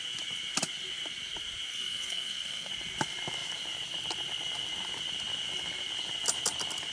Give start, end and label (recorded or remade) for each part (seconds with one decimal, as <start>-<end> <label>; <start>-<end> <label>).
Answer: 0.0-1.7 recorded; 1.7-2.7 remade; 2.7-6.9 recorded